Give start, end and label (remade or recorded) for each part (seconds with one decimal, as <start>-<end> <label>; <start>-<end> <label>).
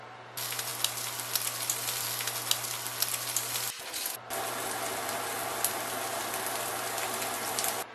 0.0-7.9 recorded